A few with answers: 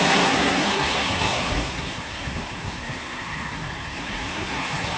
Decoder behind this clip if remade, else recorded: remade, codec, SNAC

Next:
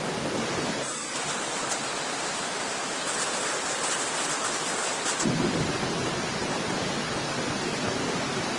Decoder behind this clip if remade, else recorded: recorded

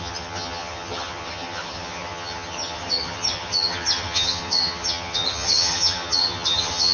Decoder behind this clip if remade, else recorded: remade, vocoder, HiFi-GAN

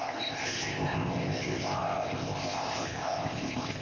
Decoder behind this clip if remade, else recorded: remade, codec, ZipCodec